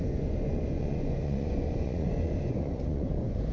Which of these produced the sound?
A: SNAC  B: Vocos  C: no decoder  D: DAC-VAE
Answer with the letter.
B